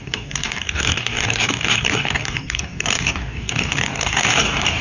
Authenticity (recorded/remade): remade